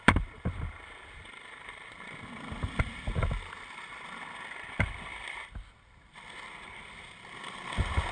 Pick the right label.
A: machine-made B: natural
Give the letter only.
A